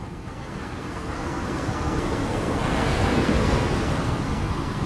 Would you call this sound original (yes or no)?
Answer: no